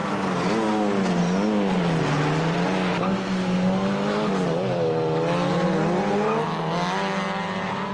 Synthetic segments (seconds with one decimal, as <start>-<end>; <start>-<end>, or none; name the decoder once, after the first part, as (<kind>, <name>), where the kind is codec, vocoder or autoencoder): none